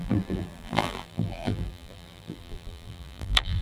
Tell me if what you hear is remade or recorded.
remade